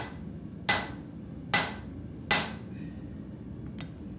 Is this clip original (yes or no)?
yes